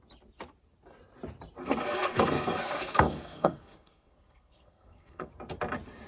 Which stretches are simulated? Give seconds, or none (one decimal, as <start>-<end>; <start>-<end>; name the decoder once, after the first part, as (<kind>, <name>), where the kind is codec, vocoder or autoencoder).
1.6-5.3 (codec, SNAC)